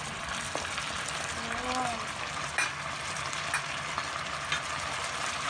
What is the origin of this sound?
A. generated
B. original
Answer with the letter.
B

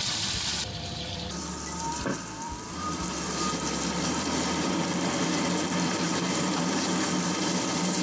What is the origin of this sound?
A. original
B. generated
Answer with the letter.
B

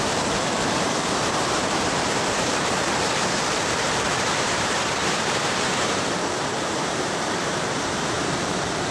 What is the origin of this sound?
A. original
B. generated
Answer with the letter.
B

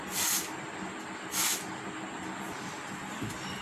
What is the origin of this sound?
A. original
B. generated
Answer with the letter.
B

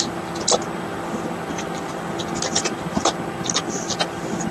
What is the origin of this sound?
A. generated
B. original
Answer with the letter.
B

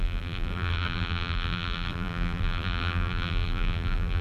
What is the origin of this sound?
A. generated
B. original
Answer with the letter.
A